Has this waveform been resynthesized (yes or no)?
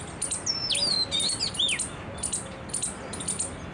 no